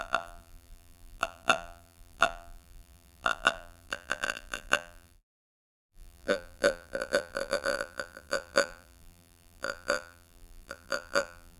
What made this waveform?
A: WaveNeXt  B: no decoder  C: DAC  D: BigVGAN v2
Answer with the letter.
D